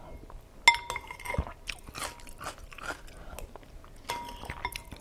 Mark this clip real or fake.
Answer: real